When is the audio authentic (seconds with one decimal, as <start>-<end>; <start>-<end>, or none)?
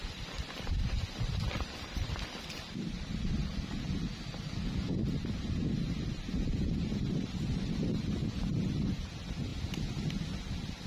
3.5-6.7; 9.5-10.9